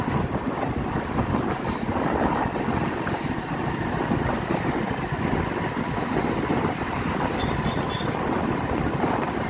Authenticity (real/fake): real